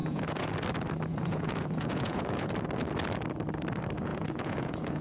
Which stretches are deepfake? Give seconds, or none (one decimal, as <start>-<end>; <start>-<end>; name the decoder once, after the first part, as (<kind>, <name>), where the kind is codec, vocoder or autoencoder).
0.0-0.5 (vocoder, Vocos); 1.1-2.5; 4.1-5.0